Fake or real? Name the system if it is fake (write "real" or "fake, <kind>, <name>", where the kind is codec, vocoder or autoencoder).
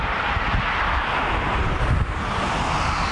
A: real